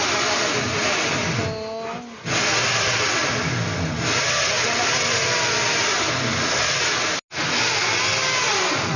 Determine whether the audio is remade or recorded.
recorded